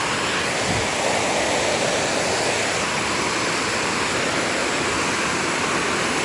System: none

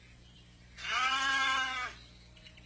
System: vocoder, BigVGAN v2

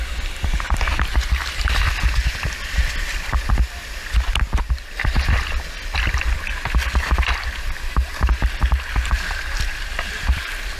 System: none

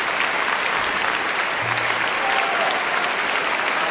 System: none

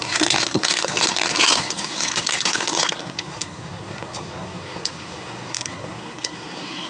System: codec, SNAC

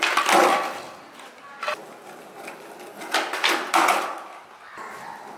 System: none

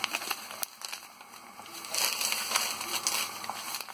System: none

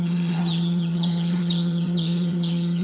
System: vocoder, HiFi-GAN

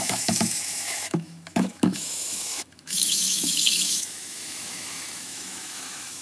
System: autoencoder, DAC-VAE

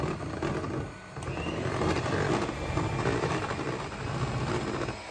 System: none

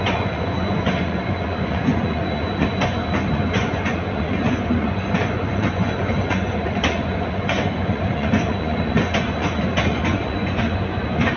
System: vocoder, Vocos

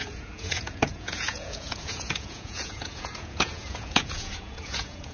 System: vocoder, Vocos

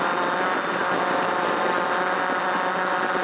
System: none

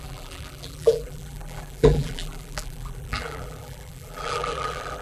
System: vocoder, BigVGAN v2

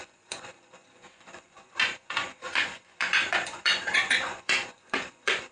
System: vocoder, Vocos